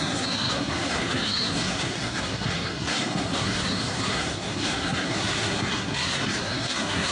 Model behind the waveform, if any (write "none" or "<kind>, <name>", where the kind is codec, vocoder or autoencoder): codec, SNAC